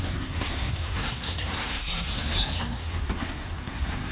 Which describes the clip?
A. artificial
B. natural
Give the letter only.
A